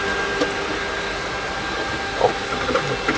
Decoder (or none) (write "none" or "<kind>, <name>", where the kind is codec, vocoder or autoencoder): none